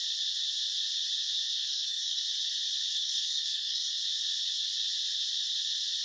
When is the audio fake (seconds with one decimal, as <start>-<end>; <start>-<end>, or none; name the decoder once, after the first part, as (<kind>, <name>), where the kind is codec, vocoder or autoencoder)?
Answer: 1.6-2.2 (codec, SNAC); 2.9-4.0